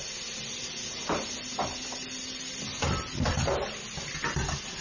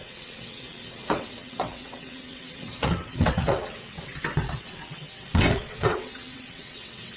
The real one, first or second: first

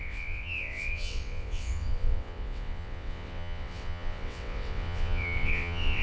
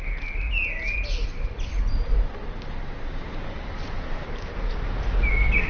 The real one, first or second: second